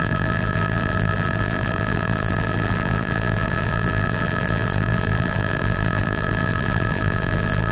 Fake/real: fake